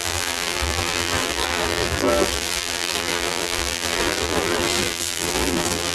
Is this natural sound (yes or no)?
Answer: no